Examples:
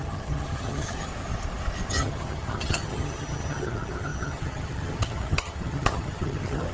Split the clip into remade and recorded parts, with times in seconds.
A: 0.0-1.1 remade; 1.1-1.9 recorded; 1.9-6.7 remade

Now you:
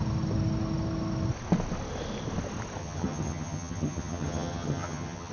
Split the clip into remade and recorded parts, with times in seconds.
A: 0.0-2.8 recorded; 2.8-5.3 remade

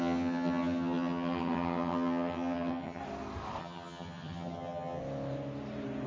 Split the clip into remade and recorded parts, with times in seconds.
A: 0.0-3.0 remade; 3.0-3.6 recorded; 3.6-5.0 remade; 5.0-6.1 recorded

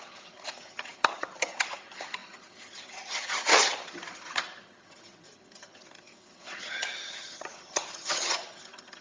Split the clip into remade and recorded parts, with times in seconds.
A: 0.0-9.0 remade

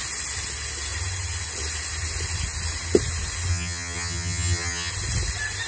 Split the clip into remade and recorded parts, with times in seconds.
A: 0.0-3.5 recorded; 3.5-4.9 remade; 4.9-5.7 recorded

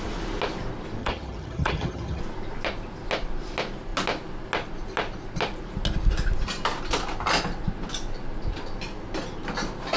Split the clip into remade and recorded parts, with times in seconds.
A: 0.0-1.0 recorded; 1.0-2.2 remade; 2.2-10.0 recorded

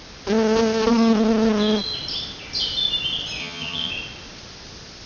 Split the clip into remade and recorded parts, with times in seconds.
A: 0.0-3.4 recorded; 3.4-3.9 remade; 3.9-5.1 recorded

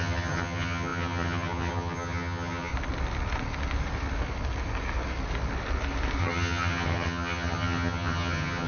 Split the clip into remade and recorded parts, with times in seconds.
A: 0.0-2.7 remade; 2.7-6.2 recorded; 6.2-8.7 remade